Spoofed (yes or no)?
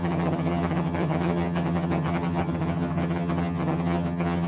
yes